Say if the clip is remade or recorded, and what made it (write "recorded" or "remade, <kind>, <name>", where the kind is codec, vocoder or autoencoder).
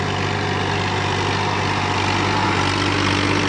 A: recorded